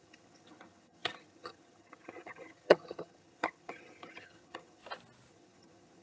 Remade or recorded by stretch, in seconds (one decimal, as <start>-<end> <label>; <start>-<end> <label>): 0.0-4.8 remade; 4.8-5.3 recorded; 5.3-6.0 remade